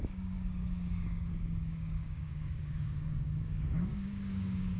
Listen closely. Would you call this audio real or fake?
fake